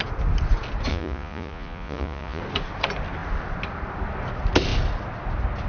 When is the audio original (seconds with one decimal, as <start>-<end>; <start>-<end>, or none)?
0.0-0.9; 2.4-5.7